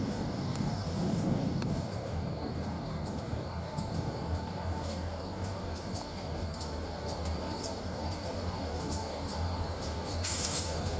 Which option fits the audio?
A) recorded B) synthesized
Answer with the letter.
B